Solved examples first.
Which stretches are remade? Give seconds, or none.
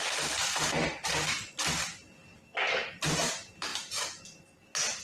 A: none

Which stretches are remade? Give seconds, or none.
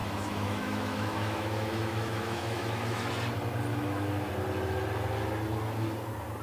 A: 0.0-3.1 (autoencoder, DAC-VAE); 3.7-4.3